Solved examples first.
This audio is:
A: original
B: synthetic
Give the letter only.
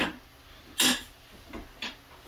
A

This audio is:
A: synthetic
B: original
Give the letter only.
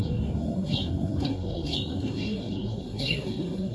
A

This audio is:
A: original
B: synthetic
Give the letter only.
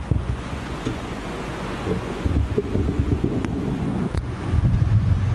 B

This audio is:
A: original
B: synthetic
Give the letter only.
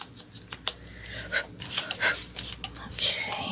A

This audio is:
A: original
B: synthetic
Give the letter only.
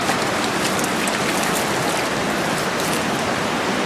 A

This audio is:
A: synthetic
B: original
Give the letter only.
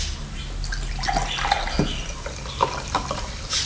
B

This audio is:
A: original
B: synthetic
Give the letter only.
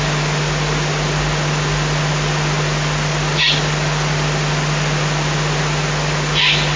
A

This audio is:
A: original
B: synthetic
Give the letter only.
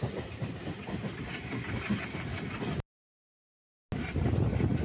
A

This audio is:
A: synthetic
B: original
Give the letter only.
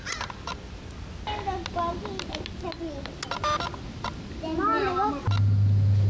B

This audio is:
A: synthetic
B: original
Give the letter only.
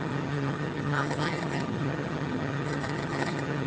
A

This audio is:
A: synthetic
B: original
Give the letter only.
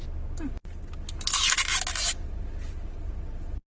B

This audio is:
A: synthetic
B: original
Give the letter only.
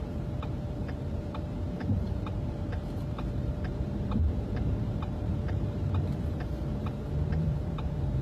A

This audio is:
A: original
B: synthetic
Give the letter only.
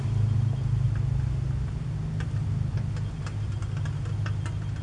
A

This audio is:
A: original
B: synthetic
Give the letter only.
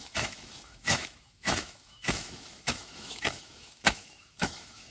B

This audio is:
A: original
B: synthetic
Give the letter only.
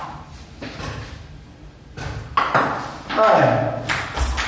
A